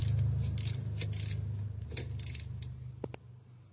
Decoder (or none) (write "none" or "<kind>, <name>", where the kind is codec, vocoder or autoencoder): none